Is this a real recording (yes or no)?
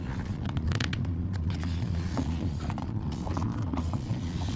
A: no